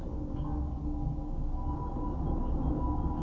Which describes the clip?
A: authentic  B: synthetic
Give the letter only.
A